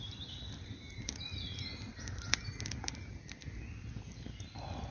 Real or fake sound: real